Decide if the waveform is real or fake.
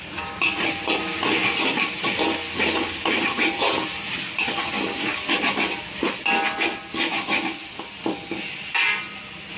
real